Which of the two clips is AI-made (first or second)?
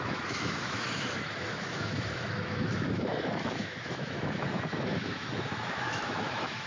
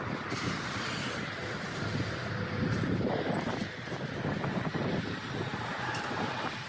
first